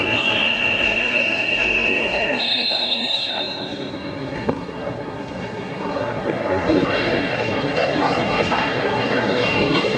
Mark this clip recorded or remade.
remade